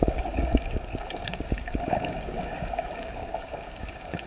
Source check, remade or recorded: remade